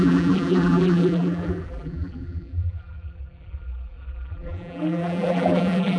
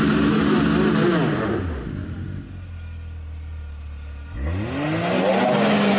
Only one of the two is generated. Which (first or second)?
first